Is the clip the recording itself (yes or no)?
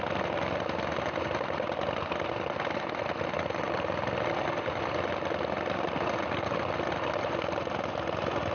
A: yes